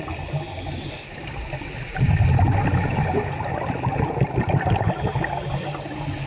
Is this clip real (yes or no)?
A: yes